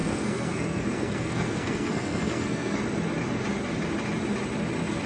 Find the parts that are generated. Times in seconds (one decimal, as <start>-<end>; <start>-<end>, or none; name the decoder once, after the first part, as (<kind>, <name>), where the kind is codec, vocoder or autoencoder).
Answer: 0.0-2.8 (codec, SNAC)